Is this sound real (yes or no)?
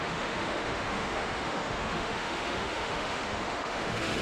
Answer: no